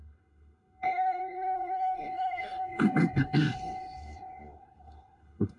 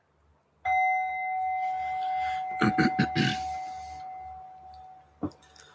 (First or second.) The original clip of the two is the second